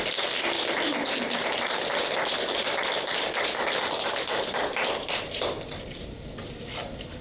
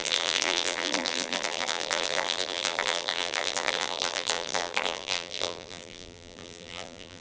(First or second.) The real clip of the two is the first